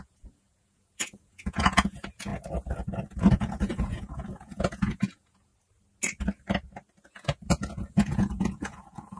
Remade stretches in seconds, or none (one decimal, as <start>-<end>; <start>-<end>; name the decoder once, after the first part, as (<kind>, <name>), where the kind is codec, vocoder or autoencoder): 0.0-2.3 (vocoder, Vocos); 3.3-5.5; 7.1-9.2